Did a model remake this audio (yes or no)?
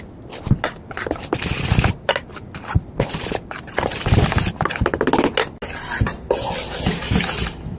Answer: no